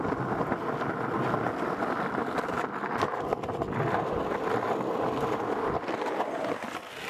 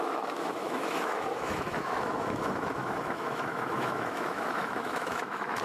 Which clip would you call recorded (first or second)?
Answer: first